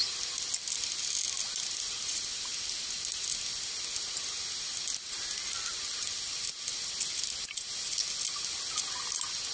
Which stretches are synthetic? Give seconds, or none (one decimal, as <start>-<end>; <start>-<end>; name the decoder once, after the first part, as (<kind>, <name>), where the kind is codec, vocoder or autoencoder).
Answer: none